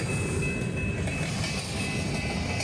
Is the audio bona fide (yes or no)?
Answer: yes